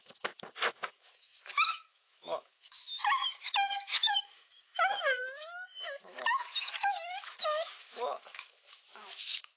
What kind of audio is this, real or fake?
fake